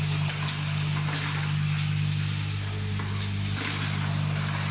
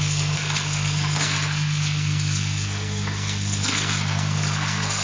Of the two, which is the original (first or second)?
first